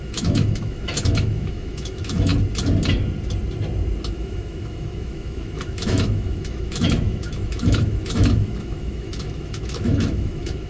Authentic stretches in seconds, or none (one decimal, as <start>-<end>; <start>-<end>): 2.3-4.1